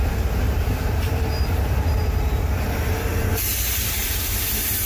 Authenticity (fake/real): fake